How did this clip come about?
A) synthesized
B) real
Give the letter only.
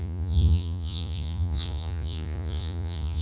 A